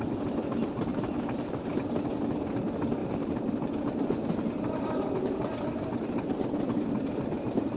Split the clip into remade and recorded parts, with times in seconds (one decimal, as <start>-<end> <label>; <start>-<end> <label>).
0.0-0.9 recorded; 0.9-1.6 remade; 1.6-3.0 recorded; 3.0-7.8 remade